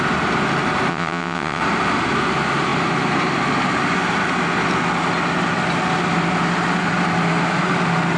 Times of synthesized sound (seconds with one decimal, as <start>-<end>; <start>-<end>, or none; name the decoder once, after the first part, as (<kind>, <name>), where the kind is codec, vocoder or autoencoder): 0.9-1.6 (vocoder, WaveNeXt)